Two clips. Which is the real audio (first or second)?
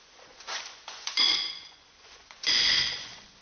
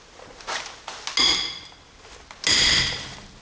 second